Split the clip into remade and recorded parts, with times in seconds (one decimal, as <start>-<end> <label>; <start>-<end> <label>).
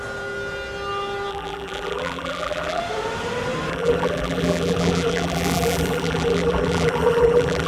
0.0-1.3 recorded; 1.3-2.8 remade; 2.8-3.7 recorded; 3.7-7.7 remade